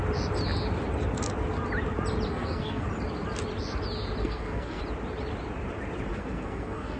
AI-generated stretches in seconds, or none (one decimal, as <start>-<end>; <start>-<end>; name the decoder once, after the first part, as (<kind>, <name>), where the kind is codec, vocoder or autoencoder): 2.3-2.9 (codec, SNAC); 4.2-4.8; 6.1-7.0